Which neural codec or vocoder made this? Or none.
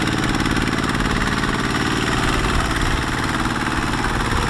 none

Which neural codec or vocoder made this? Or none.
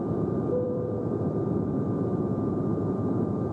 vocoder, BigVGAN v2